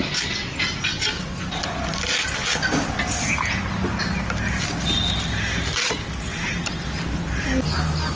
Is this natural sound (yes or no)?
yes